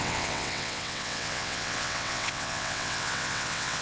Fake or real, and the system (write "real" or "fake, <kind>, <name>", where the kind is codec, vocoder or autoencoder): fake, vocoder, WaveNeXt